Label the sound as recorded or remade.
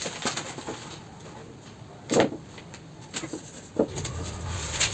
recorded